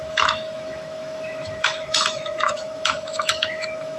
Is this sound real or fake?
fake